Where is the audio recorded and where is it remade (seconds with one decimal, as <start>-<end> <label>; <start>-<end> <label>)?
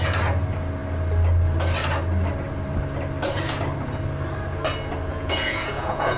0.0-5.1 recorded; 5.1-6.2 remade